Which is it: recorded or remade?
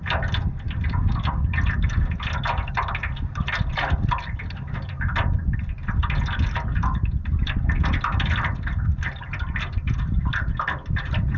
recorded